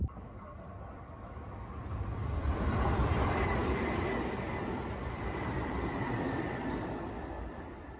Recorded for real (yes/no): no